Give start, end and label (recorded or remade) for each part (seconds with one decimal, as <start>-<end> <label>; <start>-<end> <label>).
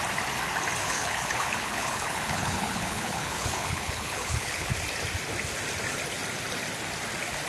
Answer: 0.0-0.8 recorded; 0.8-4.7 remade; 4.7-7.5 recorded